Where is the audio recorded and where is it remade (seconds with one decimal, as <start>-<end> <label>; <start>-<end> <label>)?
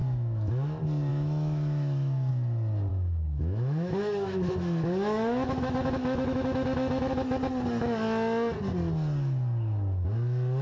0.0-0.5 remade; 0.5-1.1 recorded; 1.1-2.3 remade; 2.3-2.9 recorded; 2.9-7.1 remade; 7.1-10.6 recorded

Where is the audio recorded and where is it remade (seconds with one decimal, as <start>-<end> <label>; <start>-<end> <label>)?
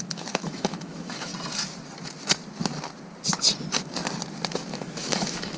0.0-1.3 remade; 1.3-4.7 recorded; 4.7-5.6 remade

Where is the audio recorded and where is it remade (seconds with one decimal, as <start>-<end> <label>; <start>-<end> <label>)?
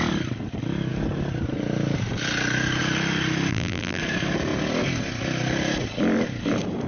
0.0-3.5 recorded; 3.5-4.0 remade; 4.0-6.9 recorded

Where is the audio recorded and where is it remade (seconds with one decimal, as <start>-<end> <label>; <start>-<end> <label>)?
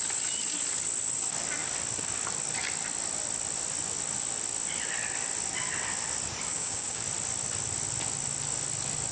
0.0-6.5 recorded; 6.5-7.0 remade; 7.0-9.1 recorded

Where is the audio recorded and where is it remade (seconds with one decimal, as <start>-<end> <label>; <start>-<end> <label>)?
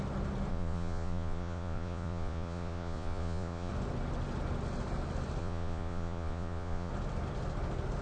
0.0-0.5 recorded; 0.5-3.7 remade; 3.7-5.4 recorded; 5.4-6.9 remade; 6.9-8.0 recorded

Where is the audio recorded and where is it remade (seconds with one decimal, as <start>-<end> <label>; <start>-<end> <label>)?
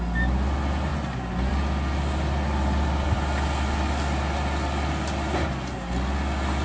0.0-6.6 recorded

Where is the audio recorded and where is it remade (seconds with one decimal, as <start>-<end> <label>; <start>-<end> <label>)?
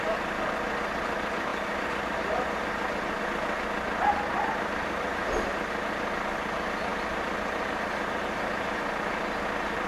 0.0-9.9 recorded